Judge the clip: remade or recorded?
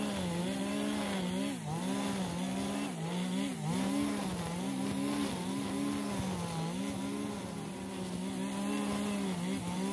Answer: recorded